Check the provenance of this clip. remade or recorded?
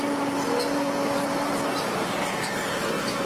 recorded